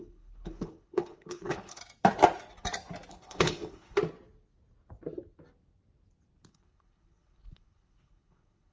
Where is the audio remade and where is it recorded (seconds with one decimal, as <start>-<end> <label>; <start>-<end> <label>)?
0.0-1.8 remade; 1.8-3.1 recorded; 3.1-4.0 remade; 4.0-6.5 recorded; 6.5-8.7 remade